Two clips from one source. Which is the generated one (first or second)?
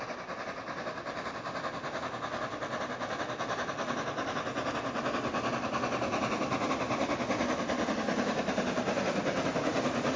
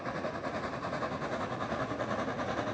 second